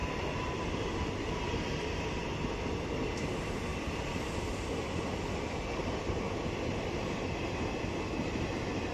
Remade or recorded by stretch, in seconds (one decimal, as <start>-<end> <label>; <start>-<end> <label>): 0.0-8.9 recorded